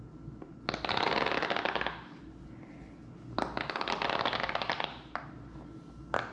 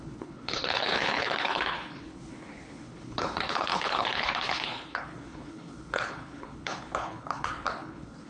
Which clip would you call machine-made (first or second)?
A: second